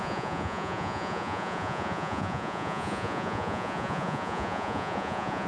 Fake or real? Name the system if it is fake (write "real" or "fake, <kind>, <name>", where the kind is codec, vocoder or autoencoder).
fake, vocoder, Vocos